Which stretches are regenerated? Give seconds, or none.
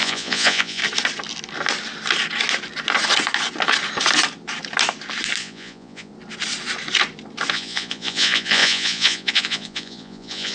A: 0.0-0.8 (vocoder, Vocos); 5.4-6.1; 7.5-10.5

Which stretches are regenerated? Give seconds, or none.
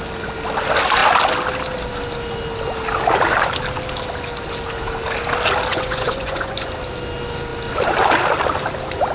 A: 5.7-6.7 (vocoder, Vocos)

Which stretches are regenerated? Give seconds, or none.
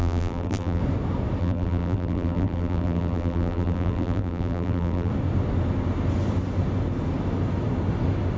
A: 0.0-0.8 (vocoder, BigVGAN v2); 1.4-5.1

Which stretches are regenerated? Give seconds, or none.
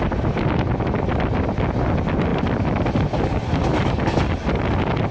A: none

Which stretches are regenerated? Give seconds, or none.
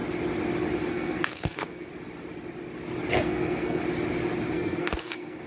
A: 0.9-1.9 (codec, SNAC); 3.1-3.8; 4.5-5.5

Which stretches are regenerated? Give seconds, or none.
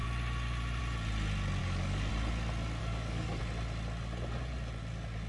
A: 1.6-2.1 (codec, DAC); 2.8-3.4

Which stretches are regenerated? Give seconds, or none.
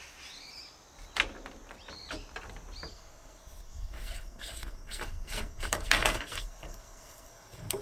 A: 2.9-7.8 (codec, SNAC)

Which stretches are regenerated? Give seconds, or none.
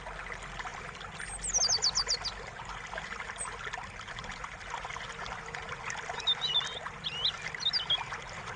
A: none